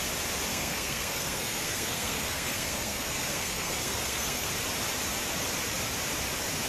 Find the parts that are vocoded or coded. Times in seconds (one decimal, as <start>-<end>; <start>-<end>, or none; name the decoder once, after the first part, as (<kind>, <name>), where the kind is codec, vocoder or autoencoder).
0.5-4.5 (codec, SNAC)